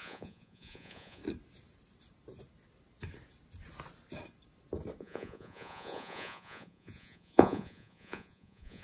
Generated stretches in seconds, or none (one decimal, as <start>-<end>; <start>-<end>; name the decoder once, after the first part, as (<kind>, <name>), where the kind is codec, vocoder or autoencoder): 0.0-1.2 (vocoder, Vocos); 5.0-8.8